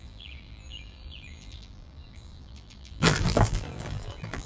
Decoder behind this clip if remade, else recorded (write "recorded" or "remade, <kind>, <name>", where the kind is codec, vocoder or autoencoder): remade, vocoder, BigVGAN v2